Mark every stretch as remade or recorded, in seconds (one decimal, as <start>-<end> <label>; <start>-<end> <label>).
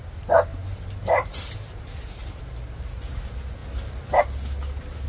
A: 0.0-0.5 recorded; 0.5-2.4 remade; 2.4-5.1 recorded